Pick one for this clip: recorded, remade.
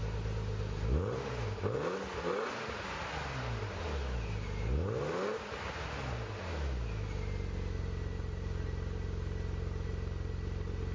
recorded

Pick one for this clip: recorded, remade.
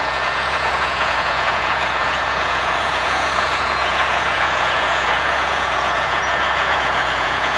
remade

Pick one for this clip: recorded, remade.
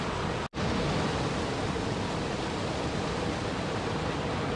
recorded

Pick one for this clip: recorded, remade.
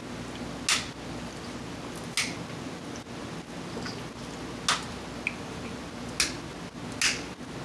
recorded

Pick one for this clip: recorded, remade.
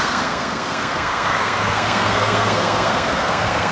remade